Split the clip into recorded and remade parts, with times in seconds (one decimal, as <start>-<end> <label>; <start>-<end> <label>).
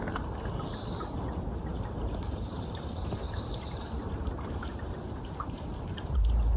0.0-1.7 recorded; 1.7-5.7 remade; 5.7-6.6 recorded